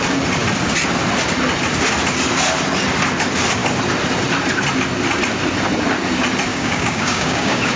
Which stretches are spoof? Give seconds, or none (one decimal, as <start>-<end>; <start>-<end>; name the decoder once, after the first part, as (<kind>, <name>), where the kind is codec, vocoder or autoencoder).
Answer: 6.5-7.8 (codec, DAC)